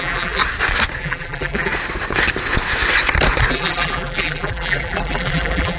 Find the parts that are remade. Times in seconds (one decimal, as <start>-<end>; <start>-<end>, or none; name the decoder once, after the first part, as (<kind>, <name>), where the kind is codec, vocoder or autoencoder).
0.0-0.4 (vocoder, BigVGAN v2); 1.0-1.7; 3.5-5.8

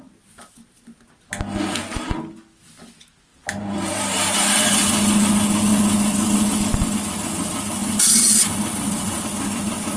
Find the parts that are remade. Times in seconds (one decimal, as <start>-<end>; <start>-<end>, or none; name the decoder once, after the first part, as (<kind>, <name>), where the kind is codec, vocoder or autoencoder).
3.3-4.6 (vocoder, BigVGAN v2); 7.8-9.2

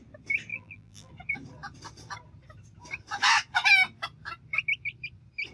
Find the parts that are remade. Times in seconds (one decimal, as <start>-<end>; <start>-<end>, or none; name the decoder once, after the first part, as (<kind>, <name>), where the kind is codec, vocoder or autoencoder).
0.5-1.1 (vocoder, BigVGAN v2)

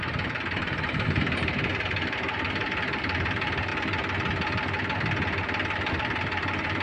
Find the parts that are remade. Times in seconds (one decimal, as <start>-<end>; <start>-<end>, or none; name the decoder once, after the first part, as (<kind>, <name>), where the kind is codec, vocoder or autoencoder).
0.0-3.7 (vocoder, BigVGAN v2); 5.9-6.8

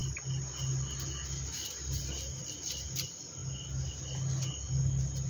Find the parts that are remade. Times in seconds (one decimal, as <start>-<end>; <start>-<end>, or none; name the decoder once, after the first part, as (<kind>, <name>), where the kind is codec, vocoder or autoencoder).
none